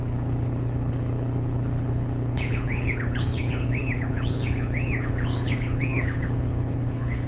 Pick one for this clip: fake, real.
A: fake